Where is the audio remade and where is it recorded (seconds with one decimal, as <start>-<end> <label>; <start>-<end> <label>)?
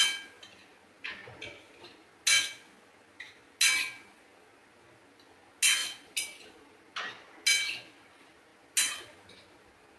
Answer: 0.0-10.0 recorded